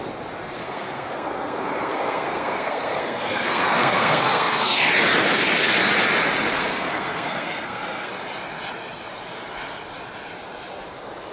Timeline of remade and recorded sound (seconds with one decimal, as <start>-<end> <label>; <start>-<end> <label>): 0.0-0.6 recorded; 0.6-4.9 remade; 4.9-6.5 recorded; 6.5-8.1 remade; 8.1-11.3 recorded